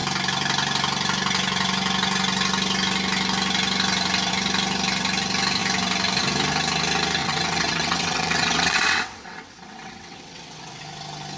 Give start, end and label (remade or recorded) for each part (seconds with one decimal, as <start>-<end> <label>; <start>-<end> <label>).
0.0-7.2 recorded; 7.2-10.8 remade; 10.8-11.4 recorded